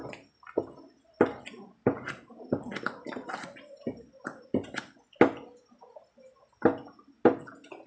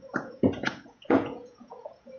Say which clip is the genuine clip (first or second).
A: first